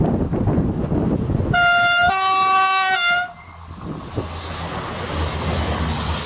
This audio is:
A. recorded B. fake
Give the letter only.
A